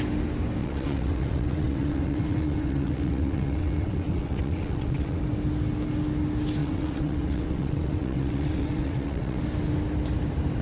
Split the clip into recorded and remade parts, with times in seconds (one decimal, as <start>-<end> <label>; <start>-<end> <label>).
0.0-0.6 recorded; 0.6-5.2 remade; 5.2-6.6 recorded; 6.6-9.4 remade; 9.4-10.6 recorded